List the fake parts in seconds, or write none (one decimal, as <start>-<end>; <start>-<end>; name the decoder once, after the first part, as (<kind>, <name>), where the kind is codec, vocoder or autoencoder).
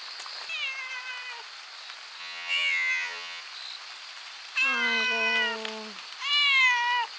2.2-3.4 (vocoder, HiFi-GAN)